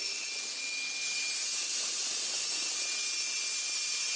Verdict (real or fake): real